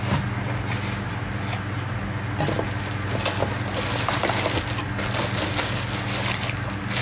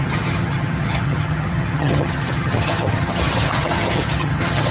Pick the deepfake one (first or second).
second